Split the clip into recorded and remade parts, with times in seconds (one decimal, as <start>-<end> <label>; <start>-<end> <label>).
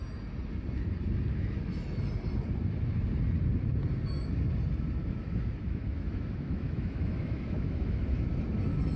0.0-1.3 recorded; 1.3-2.0 remade; 2.0-5.0 recorded; 5.0-8.0 remade; 8.0-9.0 recorded